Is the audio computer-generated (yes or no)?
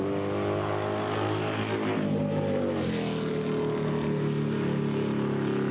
no